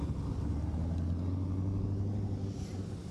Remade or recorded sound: recorded